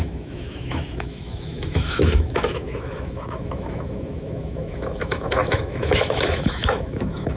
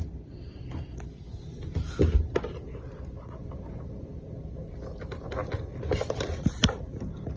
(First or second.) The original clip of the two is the second